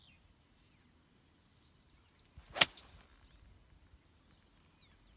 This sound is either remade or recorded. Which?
recorded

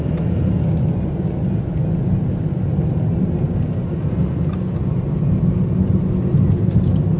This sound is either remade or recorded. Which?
recorded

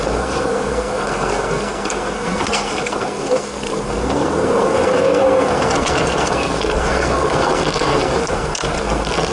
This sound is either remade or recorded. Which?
remade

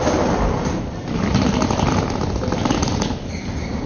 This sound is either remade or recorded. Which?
recorded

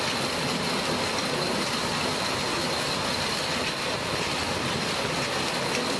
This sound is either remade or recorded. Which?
recorded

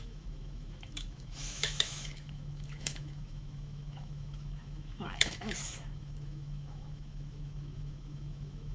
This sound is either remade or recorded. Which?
remade